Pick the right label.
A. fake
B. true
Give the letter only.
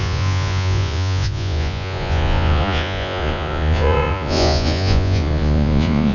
A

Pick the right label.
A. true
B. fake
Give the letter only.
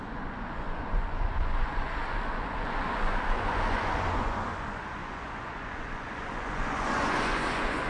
B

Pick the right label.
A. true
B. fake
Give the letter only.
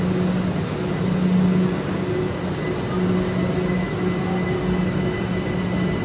A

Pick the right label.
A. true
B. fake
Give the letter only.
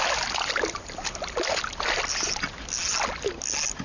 A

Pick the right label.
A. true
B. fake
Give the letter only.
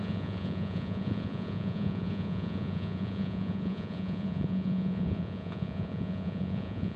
B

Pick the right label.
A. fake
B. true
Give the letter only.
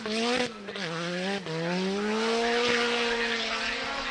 B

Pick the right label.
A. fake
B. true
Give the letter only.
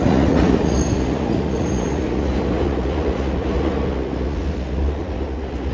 A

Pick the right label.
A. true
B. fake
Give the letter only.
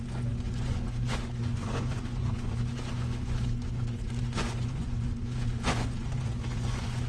B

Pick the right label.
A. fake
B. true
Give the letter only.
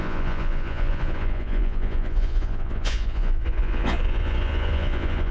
A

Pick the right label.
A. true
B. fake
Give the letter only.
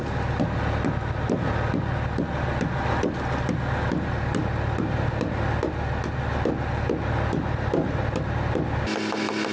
A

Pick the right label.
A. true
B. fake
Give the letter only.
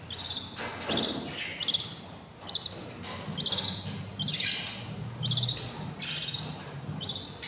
A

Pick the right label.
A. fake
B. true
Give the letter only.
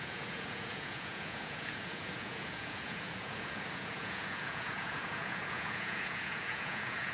A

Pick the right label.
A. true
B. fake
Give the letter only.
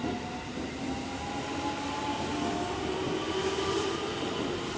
A